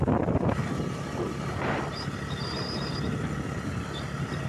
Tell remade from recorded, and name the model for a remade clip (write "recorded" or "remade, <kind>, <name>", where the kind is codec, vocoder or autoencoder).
recorded